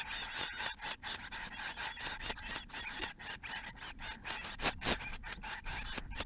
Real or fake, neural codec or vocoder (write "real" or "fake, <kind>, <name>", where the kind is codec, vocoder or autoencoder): real